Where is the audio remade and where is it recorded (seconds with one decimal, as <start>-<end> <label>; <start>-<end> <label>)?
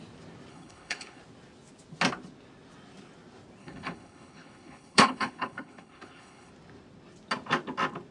0.0-0.5 recorded; 0.5-1.2 remade; 1.2-3.6 recorded; 3.6-6.5 remade; 6.5-8.1 recorded